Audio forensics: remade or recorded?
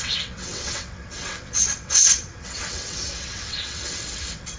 remade